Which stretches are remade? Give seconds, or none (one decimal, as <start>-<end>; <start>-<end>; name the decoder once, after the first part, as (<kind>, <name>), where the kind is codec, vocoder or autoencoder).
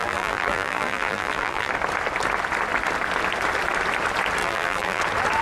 0.0-1.7 (vocoder, BigVGAN v2); 4.4-5.0